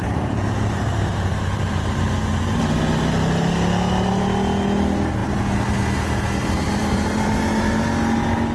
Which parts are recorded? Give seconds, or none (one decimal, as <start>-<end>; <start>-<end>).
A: 2.6-6.8; 7.7-8.5